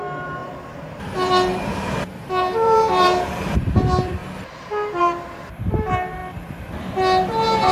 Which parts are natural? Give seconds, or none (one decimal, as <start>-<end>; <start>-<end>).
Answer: 4.2-5.6; 6.2-6.7